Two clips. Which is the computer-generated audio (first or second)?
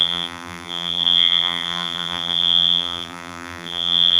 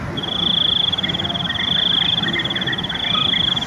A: first